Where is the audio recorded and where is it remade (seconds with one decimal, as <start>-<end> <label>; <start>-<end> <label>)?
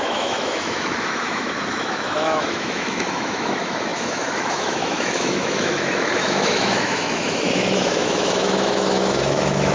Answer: 0.0-9.7 remade